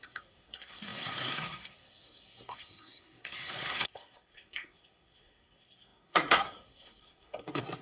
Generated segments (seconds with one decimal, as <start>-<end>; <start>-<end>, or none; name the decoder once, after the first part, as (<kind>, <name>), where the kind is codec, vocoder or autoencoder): 0.0-7.8 (codec, SNAC)